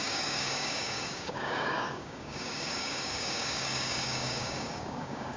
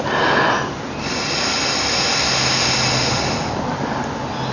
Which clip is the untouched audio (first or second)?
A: second